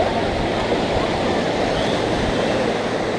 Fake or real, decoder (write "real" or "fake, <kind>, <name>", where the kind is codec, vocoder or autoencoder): real